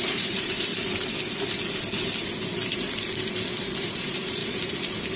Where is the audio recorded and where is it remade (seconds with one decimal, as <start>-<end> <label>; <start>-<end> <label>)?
0.0-0.7 remade; 0.7-3.8 recorded; 3.8-4.4 remade; 4.4-5.2 recorded